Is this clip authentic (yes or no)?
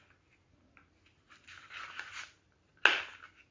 yes